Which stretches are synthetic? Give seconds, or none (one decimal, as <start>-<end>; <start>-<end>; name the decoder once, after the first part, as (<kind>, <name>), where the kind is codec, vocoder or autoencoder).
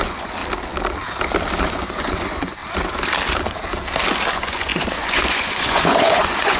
0.0-0.4 (vocoder, Vocos); 1.6-2.6; 4.3-6.6